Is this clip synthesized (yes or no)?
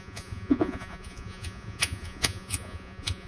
yes